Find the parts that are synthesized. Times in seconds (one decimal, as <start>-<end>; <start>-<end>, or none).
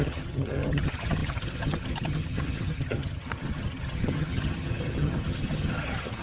0.0-6.2